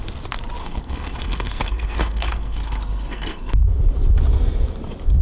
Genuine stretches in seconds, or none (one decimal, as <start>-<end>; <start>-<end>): 0.0-0.6; 3.7-5.2